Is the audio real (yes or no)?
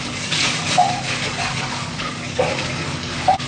no